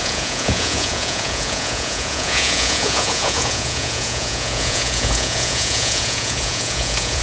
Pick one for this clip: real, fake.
fake